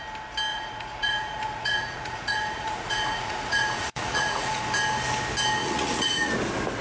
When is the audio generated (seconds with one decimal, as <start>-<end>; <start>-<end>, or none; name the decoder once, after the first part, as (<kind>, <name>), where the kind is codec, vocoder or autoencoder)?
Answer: 0.5-4.6 (vocoder, Vocos); 5.6-6.3